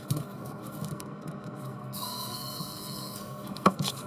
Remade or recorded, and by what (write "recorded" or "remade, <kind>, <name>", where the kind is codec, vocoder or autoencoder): remade, codec, SNAC